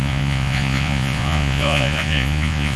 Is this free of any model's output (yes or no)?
no